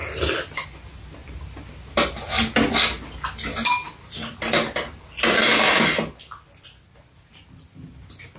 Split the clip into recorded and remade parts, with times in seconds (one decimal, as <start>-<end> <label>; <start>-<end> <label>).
0.0-8.4 recorded